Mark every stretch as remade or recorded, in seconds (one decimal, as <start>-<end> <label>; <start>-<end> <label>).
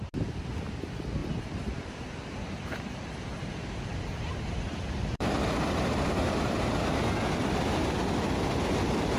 0.0-1.2 recorded; 1.2-6.1 remade; 6.1-9.2 recorded